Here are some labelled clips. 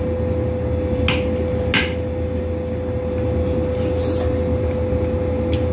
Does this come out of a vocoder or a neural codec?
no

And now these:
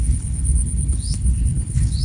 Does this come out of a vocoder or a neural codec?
yes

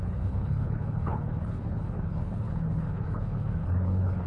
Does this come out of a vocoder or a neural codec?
yes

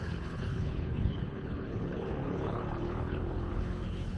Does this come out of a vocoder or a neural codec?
yes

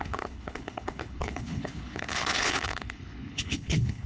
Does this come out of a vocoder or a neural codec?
yes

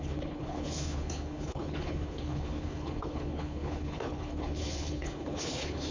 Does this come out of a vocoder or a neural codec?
yes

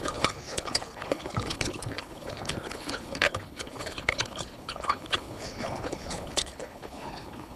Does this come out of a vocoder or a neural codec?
yes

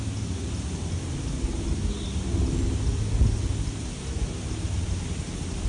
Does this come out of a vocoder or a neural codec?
no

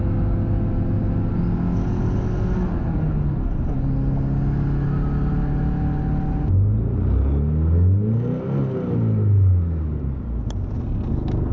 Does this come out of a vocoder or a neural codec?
no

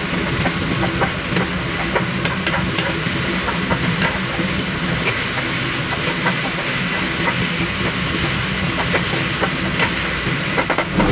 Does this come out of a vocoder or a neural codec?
no